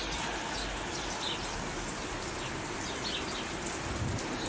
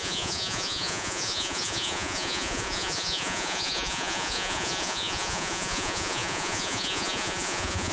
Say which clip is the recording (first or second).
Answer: first